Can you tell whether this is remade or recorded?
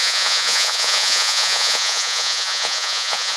remade